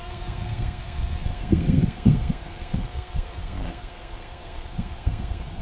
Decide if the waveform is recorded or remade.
remade